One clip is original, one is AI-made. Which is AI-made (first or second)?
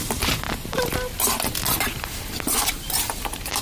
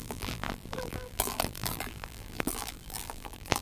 second